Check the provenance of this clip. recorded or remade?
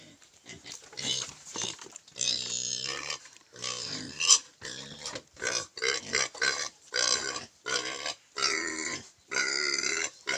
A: remade